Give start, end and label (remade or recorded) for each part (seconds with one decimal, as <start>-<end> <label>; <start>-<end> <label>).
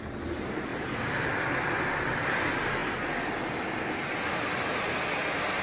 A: 0.0-5.6 recorded